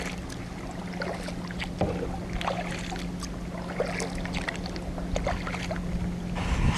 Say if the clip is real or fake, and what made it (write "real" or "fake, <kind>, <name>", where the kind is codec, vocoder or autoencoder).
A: real